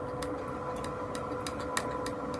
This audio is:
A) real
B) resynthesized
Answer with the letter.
A